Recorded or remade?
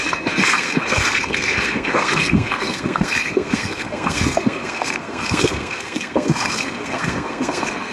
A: remade